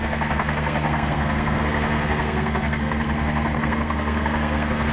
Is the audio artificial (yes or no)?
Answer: yes